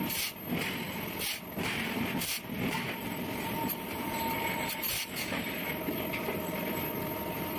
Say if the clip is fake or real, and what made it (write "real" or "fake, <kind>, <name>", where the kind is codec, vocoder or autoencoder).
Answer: fake, vocoder, BigVGAN v2